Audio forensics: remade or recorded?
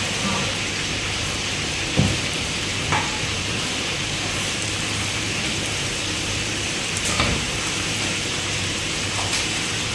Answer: remade